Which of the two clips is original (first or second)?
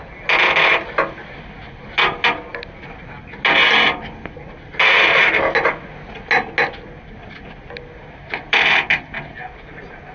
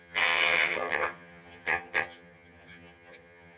first